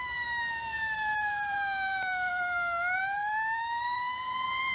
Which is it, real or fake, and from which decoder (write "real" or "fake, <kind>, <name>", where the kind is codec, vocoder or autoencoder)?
fake, vocoder, BigVGAN v2